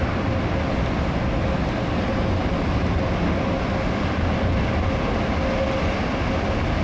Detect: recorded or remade recorded